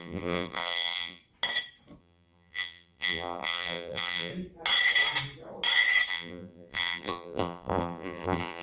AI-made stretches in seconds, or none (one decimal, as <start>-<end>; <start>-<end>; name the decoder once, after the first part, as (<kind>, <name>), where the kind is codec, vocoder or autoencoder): 0.0-1.2 (vocoder, BigVGAN v2); 2.0-4.3; 6.1-8.6